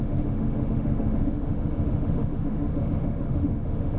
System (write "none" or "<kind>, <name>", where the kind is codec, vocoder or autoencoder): autoencoder, DAC-VAE